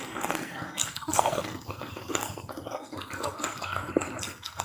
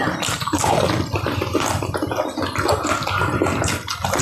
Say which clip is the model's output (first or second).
first